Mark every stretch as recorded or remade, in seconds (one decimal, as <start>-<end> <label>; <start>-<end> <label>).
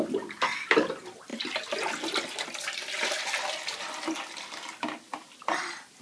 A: 0.0-6.0 recorded